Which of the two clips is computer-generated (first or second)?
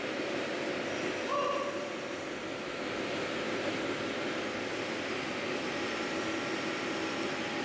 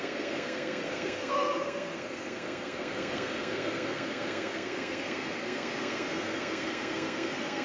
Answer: second